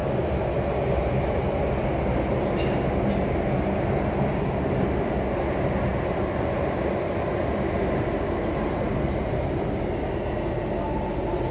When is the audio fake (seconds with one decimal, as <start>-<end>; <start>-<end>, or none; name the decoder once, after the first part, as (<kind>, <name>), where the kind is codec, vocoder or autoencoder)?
none